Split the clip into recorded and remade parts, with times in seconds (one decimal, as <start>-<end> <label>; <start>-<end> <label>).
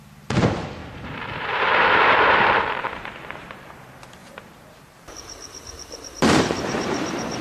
0.0-0.8 recorded; 0.8-3.8 remade; 3.8-4.2 recorded; 4.2-7.4 remade